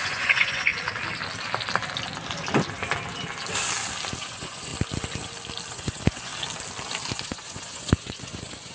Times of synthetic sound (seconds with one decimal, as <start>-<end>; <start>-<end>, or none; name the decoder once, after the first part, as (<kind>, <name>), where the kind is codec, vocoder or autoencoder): 0.0-0.7 (vocoder, Vocos); 4.2-4.7; 5.7-6.3; 7.1-8.7